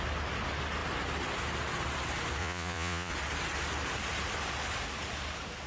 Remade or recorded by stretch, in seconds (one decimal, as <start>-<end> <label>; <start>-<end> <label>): 0.0-2.4 recorded; 2.4-3.1 remade; 3.1-5.7 recorded